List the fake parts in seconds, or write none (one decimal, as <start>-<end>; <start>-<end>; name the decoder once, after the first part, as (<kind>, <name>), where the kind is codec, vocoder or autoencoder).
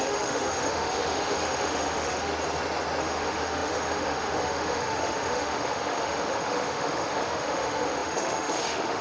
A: 0.0-2.3 (autoencoder, DAC-VAE); 3.0-9.0